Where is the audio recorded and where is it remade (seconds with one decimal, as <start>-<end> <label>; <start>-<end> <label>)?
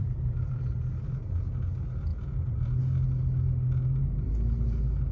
0.0-0.6 remade; 0.6-5.1 recorded